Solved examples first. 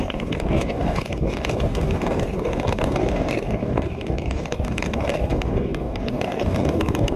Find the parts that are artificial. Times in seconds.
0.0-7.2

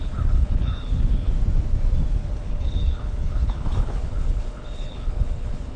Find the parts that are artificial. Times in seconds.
0.0-1.3; 2.2-5.8

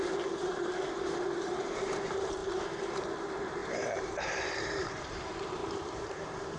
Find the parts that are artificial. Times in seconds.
0.0-2.4; 2.9-6.6